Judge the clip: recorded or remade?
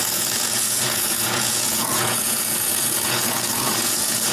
remade